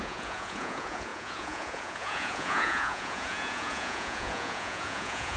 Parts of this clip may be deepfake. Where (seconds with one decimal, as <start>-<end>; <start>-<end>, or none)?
0.0-5.4